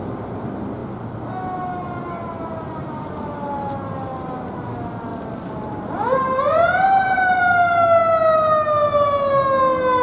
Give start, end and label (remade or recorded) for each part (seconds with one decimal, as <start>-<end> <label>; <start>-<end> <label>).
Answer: 0.0-5.1 recorded; 5.1-7.4 remade; 7.4-10.0 recorded